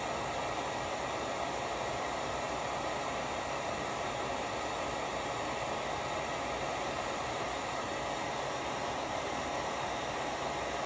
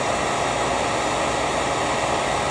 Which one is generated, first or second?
first